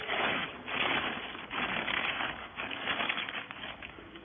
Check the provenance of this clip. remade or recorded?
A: remade